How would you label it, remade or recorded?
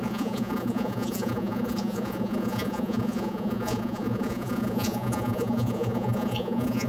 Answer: remade